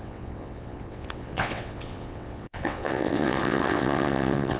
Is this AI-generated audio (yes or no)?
yes